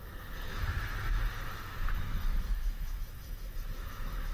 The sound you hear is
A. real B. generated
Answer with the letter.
B